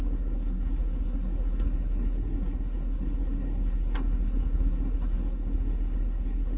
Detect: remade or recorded remade